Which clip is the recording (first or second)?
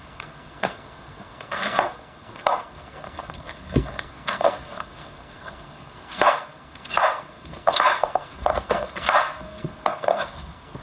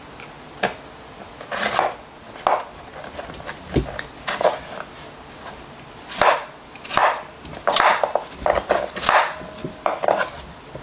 second